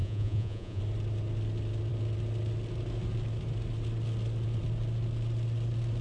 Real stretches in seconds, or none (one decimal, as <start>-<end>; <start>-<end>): 0.8-6.0